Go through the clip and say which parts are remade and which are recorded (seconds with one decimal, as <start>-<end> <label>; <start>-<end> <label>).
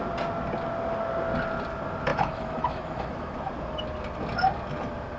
0.0-2.1 recorded; 2.1-3.5 remade; 3.5-5.2 recorded